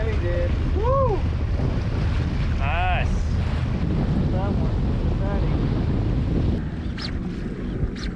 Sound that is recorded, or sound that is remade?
recorded